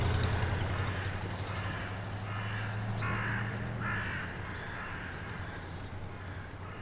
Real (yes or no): yes